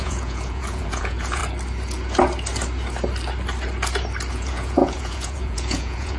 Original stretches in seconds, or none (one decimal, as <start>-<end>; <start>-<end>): 1.4-4.3